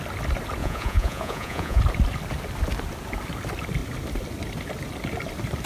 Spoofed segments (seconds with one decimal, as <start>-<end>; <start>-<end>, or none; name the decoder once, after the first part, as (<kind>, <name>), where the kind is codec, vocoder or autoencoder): 0.6-1.8 (vocoder, Vocos)